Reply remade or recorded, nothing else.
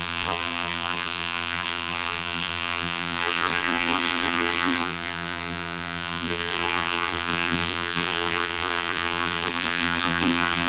remade